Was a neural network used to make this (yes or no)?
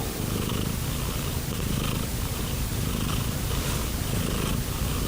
no